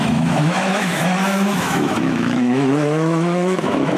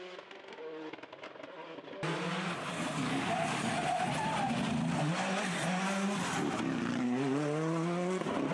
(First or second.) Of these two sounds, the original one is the second